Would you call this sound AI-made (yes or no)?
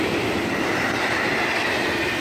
no